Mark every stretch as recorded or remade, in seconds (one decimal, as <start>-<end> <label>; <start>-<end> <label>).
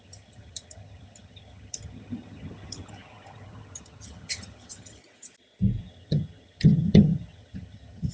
0.0-5.0 remade; 5.0-5.8 recorded; 5.8-8.1 remade